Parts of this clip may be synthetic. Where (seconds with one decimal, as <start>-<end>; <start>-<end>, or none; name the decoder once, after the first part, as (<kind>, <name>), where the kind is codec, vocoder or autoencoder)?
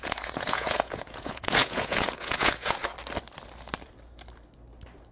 0.0-2.8 (vocoder, Vocos)